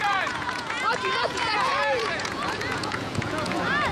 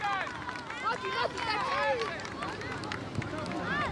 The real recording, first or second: second